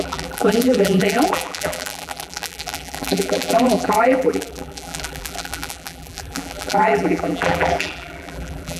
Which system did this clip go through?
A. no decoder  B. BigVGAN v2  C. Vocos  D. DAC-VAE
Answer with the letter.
B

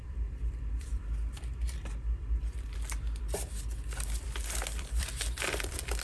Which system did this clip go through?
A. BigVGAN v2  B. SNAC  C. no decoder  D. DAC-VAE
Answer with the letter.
A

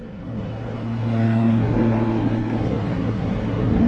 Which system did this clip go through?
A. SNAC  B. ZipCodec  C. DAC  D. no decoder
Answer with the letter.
A